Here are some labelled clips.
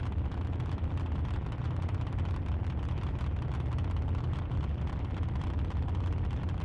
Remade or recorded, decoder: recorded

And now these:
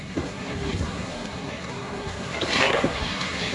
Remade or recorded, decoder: remade, codec, SNAC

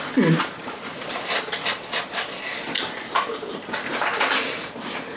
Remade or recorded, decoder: remade, vocoder, BigVGAN v2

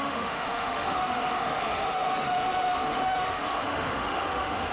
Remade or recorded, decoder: remade, autoencoder, DAC-VAE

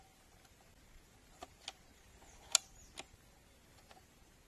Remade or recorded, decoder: recorded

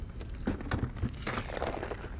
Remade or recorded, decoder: recorded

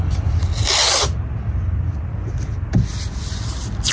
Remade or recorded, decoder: recorded